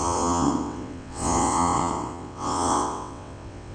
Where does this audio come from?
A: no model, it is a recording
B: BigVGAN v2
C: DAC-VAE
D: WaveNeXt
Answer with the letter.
D